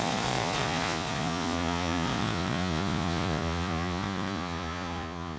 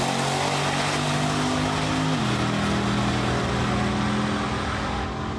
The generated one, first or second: first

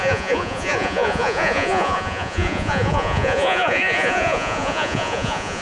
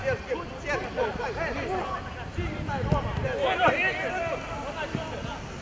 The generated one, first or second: first